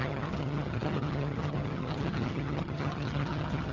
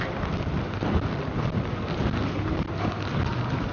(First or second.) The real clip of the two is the second